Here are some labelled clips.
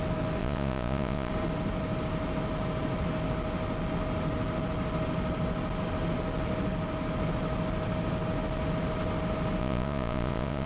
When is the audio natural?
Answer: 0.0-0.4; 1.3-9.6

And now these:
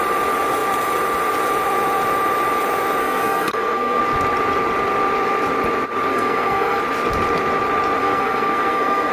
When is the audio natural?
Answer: 0.0-3.0; 4.0-6.1; 6.8-8.0

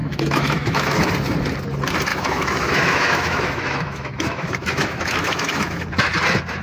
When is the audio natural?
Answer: 1.1-2.1; 5.8-6.6

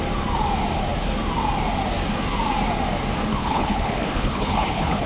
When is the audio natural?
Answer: 0.0-3.3

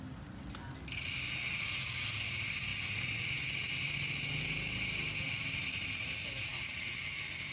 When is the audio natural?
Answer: 0.0-7.5

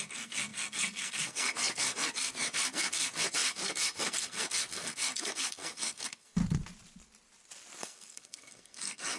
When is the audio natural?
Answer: 6.4-7.8

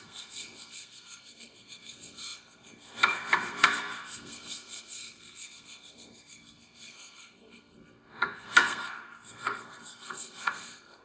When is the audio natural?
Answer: none

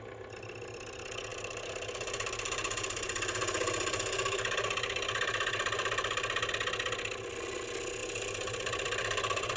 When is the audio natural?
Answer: 0.0-1.3; 6.5-8.0